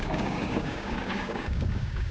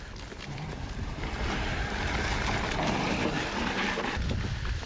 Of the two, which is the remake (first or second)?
first